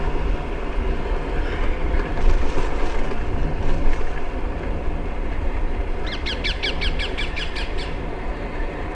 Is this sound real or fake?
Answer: real